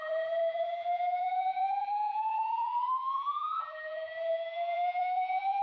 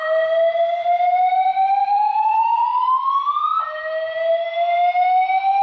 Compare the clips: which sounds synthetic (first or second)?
first